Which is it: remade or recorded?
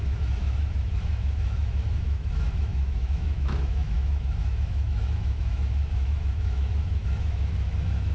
remade